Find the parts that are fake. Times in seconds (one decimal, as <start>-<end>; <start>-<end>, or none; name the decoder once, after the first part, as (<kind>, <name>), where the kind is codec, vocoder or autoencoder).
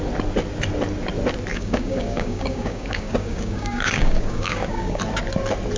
1.5-5.0 (codec, DAC)